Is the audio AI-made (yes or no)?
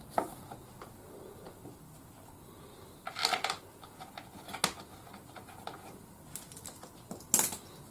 no